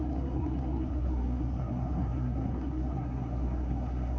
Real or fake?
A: fake